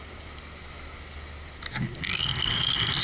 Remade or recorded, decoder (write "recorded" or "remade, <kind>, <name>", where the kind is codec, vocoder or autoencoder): recorded